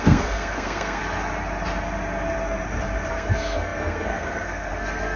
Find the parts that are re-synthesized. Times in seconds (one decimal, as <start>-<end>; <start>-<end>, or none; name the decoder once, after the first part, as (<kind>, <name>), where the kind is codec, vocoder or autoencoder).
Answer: 0.0-1.0 (codec, SNAC); 3.1-5.2